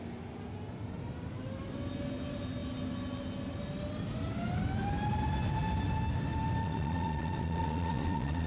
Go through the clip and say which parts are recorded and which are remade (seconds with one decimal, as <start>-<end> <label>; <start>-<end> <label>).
0.0-6.6 recorded; 6.6-8.5 remade